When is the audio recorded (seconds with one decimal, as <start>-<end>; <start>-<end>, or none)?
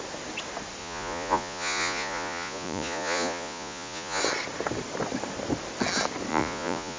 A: 0.0-0.8; 4.2-6.3